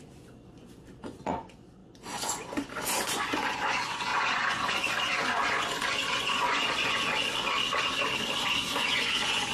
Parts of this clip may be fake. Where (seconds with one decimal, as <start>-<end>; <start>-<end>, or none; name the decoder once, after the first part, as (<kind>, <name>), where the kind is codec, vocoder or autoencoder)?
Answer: 0.0-7.3 (vocoder, Vocos); 8.4-9.5